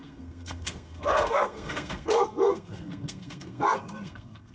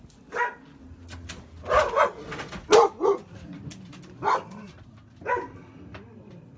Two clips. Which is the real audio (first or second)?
second